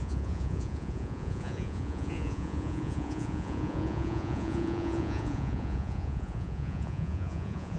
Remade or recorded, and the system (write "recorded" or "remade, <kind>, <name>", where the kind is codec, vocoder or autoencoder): remade, vocoder, Vocos